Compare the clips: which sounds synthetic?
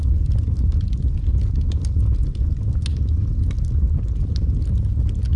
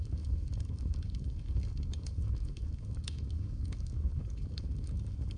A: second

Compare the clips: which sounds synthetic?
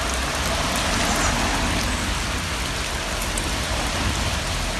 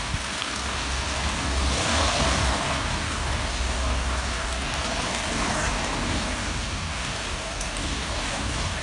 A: second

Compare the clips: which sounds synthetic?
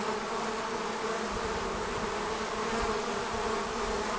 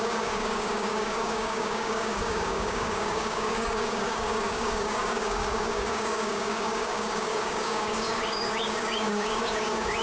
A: second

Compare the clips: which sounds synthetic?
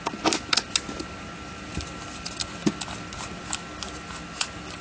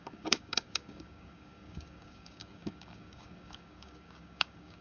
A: second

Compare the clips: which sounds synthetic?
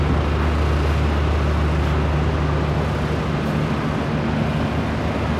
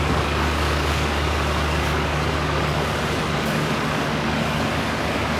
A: second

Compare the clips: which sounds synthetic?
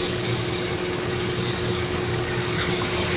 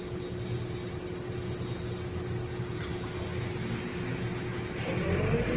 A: first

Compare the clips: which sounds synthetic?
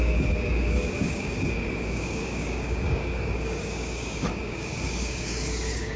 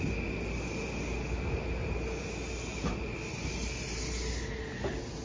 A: first